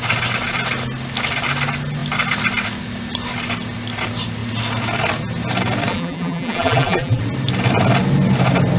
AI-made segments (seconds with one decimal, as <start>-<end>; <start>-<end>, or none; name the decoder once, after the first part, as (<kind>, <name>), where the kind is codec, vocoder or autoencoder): 5.9-7.2 (vocoder, BigVGAN v2)